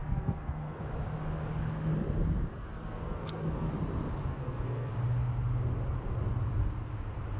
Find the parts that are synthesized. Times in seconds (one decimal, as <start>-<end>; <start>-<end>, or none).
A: 0.0-0.8; 2.5-3.7; 4.3-4.9